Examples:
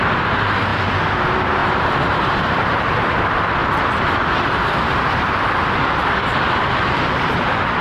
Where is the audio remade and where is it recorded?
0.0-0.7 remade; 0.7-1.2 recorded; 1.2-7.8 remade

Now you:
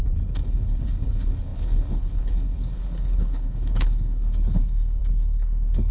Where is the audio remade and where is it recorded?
0.0-5.9 remade

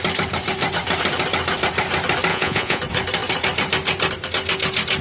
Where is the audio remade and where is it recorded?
0.0-2.3 recorded; 2.3-2.8 remade; 2.8-5.0 recorded

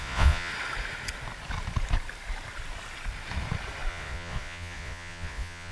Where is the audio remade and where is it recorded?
0.0-0.5 remade; 0.5-3.9 recorded; 3.9-5.7 remade

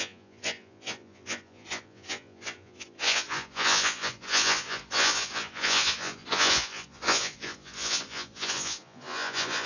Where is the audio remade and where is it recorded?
0.0-9.7 remade

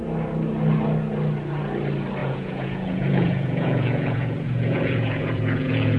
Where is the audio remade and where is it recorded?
0.0-2.2 recorded; 2.2-6.0 remade

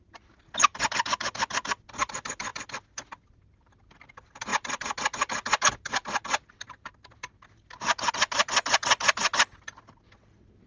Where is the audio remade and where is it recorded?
0.0-10.7 recorded

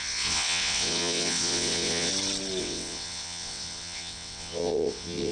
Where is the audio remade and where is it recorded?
0.0-2.1 remade; 2.1-2.6 recorded; 2.6-5.3 remade